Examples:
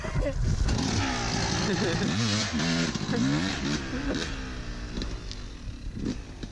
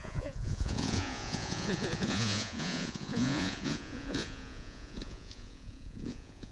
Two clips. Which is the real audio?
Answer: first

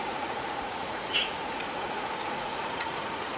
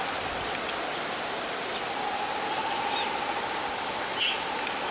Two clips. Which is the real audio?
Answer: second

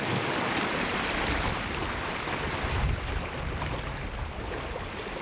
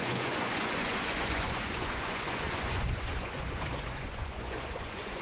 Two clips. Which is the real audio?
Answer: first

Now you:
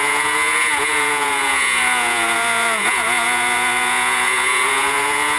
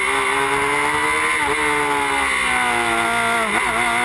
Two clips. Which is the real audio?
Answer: second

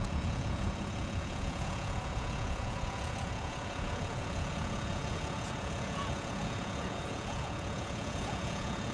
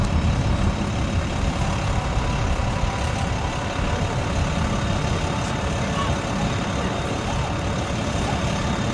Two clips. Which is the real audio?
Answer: second